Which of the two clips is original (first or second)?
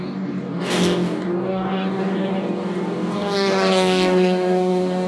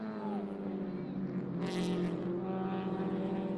second